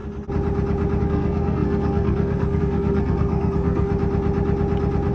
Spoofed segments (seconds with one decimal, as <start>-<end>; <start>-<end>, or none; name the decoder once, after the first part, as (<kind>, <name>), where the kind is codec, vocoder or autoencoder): 1.0-3.9 (codec, SNAC)

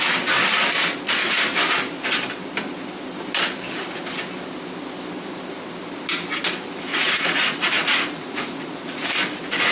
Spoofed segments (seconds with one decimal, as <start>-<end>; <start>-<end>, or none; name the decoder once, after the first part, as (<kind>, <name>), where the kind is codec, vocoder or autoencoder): 6.9-9.1 (vocoder, Vocos)

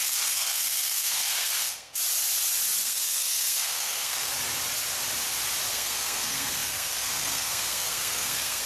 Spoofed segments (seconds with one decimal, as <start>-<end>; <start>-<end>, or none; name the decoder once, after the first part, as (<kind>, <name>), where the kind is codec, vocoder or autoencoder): 0.0-2.0 (codec, SNAC); 2.8-4.3; 5.7-8.7

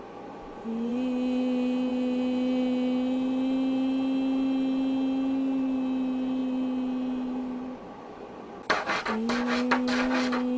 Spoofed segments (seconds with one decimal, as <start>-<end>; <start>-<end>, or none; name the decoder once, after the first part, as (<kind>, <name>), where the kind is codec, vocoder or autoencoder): none

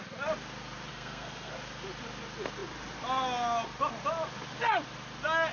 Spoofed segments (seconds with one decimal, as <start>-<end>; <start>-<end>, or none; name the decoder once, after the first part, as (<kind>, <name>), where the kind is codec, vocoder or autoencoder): 0.9-1.5 (codec, SNAC)

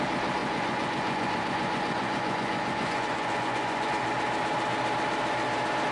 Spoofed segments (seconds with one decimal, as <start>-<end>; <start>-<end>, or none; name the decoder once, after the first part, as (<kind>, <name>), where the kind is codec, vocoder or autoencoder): 0.4-3.9 (vocoder, Vocos)

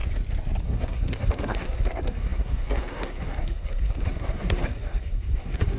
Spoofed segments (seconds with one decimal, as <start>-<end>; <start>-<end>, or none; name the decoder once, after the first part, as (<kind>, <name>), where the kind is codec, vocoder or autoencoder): 0.6-5.8 (codec, SNAC)

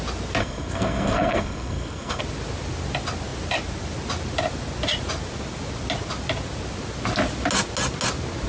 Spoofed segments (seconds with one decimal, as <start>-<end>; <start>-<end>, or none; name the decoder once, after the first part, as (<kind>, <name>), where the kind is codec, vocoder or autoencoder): 0.4-2.2 (codec, SNAC)